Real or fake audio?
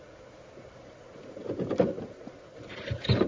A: real